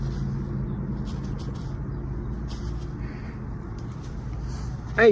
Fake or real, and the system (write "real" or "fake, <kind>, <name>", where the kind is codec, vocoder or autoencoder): real